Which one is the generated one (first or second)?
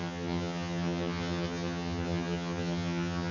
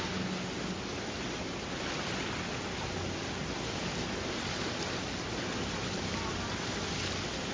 first